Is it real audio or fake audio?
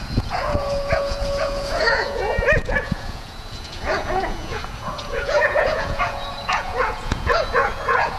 fake